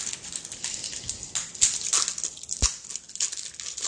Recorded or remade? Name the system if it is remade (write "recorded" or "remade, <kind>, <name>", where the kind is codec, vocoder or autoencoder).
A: recorded